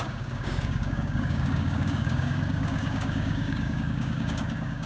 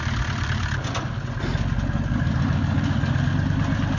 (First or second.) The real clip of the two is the second